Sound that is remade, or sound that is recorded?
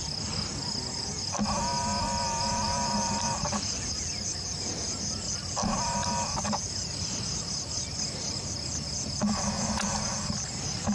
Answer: recorded